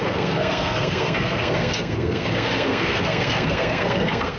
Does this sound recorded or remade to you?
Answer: remade